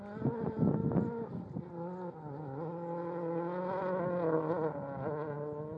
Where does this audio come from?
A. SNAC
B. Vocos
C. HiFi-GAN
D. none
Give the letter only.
D